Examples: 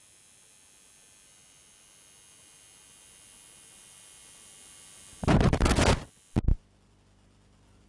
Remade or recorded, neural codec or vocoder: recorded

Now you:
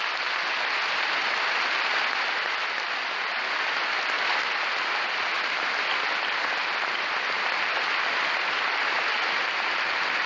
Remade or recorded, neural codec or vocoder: recorded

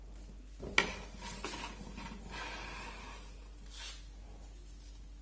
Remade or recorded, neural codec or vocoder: recorded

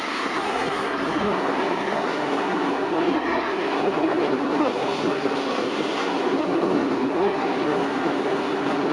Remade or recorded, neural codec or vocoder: remade, codec, SNAC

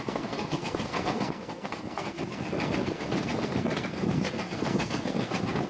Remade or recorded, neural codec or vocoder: remade, codec, SNAC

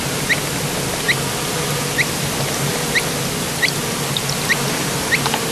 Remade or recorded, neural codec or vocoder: recorded